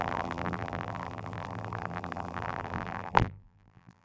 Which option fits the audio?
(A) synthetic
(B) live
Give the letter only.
A